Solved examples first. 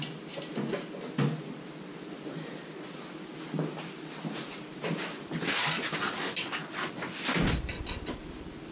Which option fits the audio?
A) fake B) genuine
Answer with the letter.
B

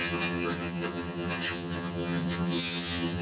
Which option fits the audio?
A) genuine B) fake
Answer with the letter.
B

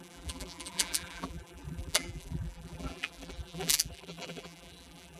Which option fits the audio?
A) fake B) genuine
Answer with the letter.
A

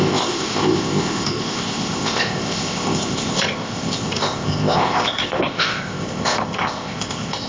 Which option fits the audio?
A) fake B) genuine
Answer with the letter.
A